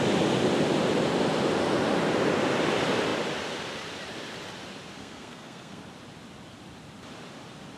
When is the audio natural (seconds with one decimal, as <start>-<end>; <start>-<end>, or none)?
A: 0.0-5.0; 5.8-7.8